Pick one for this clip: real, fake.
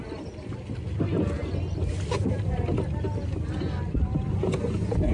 real